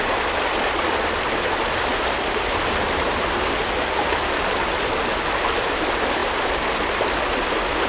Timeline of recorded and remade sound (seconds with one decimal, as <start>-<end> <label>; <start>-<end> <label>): 0.0-7.9 recorded